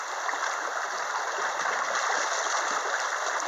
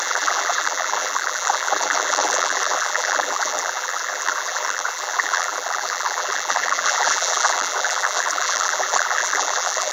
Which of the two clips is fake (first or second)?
second